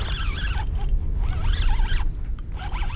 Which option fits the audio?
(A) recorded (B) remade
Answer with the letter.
A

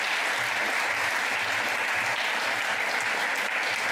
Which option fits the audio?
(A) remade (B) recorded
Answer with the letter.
B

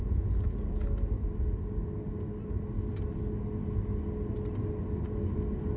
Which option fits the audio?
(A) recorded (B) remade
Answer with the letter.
A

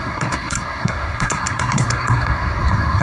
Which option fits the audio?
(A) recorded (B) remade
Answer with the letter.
B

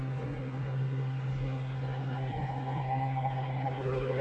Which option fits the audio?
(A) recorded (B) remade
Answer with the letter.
B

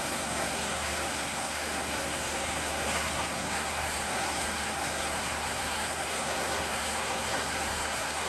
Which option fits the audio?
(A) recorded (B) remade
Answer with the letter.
B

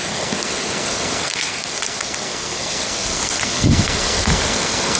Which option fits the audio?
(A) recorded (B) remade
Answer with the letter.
B